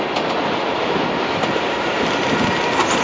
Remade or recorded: recorded